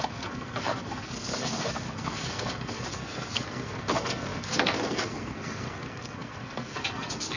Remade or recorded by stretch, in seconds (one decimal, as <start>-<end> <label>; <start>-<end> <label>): 0.0-7.4 remade